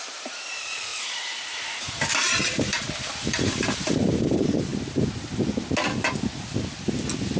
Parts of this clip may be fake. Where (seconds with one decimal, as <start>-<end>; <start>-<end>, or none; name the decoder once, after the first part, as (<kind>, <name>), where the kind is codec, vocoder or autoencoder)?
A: 0.0-4.7 (vocoder, BigVGAN v2)